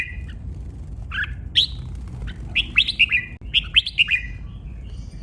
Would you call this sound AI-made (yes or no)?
no